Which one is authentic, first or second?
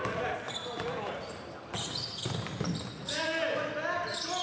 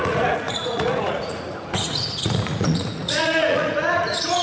first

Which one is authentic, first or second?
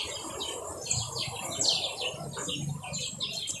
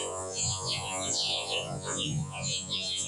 first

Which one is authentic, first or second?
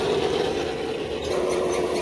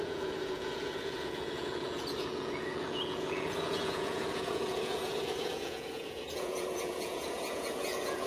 first